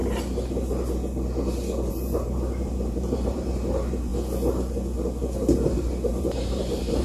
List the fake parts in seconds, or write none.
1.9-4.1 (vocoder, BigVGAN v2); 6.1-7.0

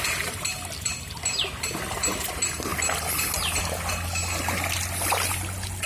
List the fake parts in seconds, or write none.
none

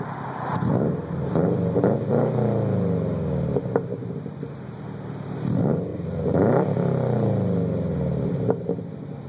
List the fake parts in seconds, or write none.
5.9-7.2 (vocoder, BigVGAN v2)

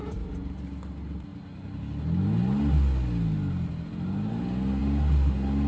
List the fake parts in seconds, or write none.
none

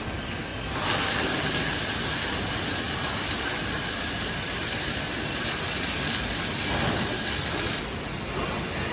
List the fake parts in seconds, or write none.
0.0-0.5 (vocoder, BigVGAN v2); 4.5-8.9

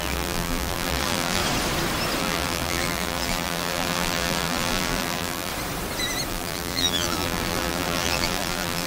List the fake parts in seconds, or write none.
0.0-1.4 (vocoder, BigVGAN v2); 2.2-5.5; 6.3-8.9

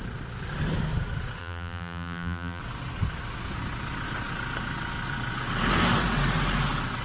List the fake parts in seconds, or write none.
1.4-2.6 (vocoder, BigVGAN v2)